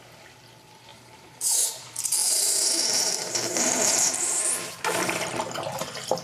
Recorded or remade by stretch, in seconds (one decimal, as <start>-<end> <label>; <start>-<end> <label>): 0.0-0.9 recorded; 0.9-1.7 remade; 1.7-2.2 recorded; 2.2-5.3 remade; 5.3-6.2 recorded